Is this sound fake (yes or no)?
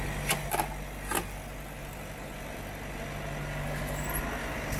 no